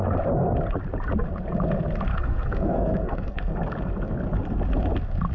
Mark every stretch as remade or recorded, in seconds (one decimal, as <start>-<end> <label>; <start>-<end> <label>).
0.0-2.1 recorded; 2.1-3.5 remade; 3.5-5.3 recorded